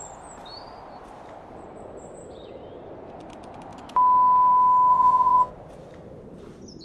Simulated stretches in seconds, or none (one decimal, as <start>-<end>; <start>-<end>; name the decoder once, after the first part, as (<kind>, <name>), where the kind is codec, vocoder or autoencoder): 4.9-5.5 (vocoder, Vocos)